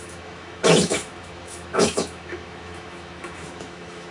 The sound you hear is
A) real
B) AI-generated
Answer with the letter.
B